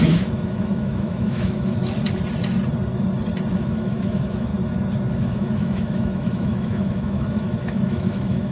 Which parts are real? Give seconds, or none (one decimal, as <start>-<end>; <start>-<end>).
1.8-3.5; 4.5-5.1